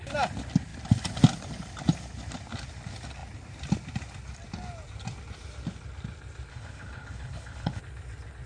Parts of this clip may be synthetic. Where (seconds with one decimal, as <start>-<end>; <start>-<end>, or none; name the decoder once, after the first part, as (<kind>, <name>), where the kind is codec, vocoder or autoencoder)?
6.5-7.8 (codec, HILCodec)